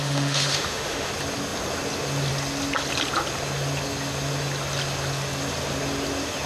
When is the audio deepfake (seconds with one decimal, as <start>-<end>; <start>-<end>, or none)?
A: 0.0-1.1